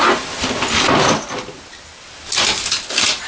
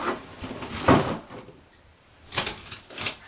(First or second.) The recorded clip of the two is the first